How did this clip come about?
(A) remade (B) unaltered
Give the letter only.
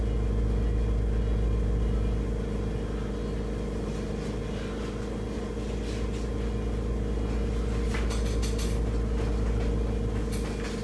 B